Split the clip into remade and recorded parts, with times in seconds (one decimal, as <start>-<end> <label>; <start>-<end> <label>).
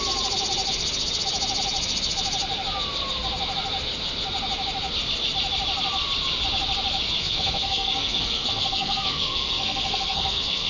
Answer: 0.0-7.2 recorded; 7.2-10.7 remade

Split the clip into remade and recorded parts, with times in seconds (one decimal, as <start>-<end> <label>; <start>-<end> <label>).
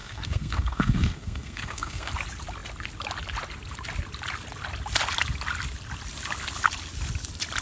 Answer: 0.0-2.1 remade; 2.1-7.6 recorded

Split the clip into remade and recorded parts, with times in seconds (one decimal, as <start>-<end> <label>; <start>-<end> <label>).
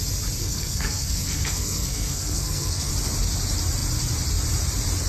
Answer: 0.0-0.4 recorded; 0.4-2.9 remade; 2.9-5.1 recorded